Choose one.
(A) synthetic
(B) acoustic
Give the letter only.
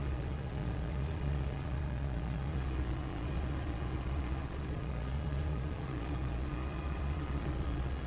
A